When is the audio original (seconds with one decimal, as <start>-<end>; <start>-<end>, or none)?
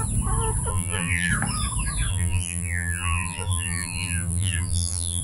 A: 0.0-0.7; 1.3-2.1